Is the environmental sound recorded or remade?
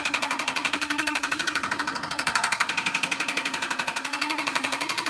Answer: remade